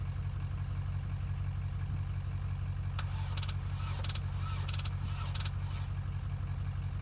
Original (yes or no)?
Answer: yes